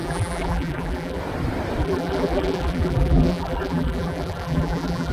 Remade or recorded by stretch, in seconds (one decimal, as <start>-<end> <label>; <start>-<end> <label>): 0.0-1.2 remade; 1.2-1.8 recorded; 1.8-5.1 remade